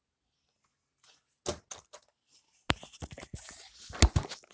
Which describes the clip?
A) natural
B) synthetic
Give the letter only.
A